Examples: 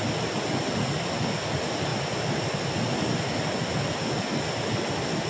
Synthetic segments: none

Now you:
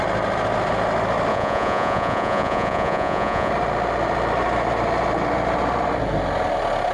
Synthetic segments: 1.3-3.5 (vocoder, Vocos)